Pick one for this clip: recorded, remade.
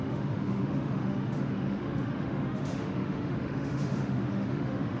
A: remade